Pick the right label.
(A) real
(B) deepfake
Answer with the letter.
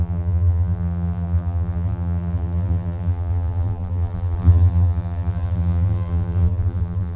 B